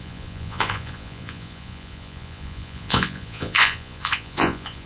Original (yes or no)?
no